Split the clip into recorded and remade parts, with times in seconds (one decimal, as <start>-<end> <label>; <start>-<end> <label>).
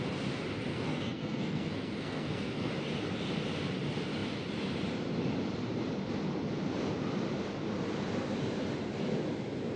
0.0-0.7 recorded; 0.7-2.7 remade; 2.7-9.8 recorded